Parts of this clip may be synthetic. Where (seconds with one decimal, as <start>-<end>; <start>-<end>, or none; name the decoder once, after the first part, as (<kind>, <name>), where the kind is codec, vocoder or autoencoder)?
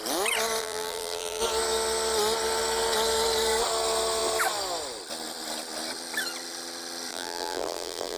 0.6-1.4 (vocoder, BigVGAN v2); 7.1-8.2